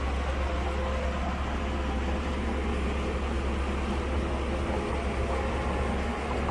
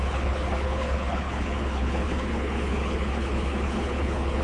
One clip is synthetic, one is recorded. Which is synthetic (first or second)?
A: second